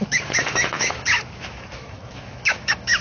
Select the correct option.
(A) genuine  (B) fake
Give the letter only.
B